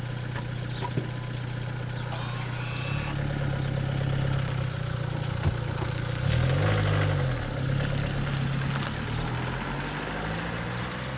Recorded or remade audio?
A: recorded